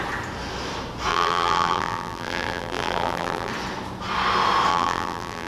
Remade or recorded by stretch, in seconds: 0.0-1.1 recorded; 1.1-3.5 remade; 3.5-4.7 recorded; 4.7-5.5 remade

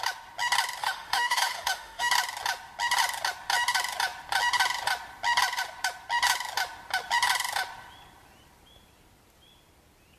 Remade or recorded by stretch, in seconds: 0.0-0.8 recorded; 0.8-2.1 remade; 2.1-10.2 recorded

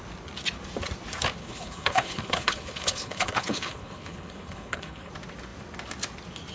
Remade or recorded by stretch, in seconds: 0.0-1.4 recorded; 1.4-5.1 remade; 5.1-6.5 recorded

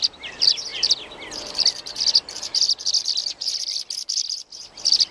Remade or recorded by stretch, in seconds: 0.0-0.7 recorded; 0.7-3.8 remade; 3.8-5.1 recorded

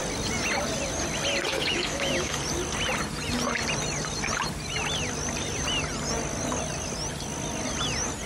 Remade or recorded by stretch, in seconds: 0.0-1.5 recorded; 1.5-2.4 remade; 2.4-8.3 recorded